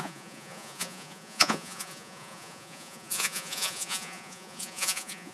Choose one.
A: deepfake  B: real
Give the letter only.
A